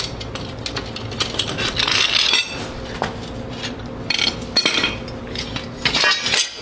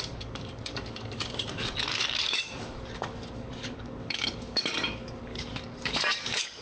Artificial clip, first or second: second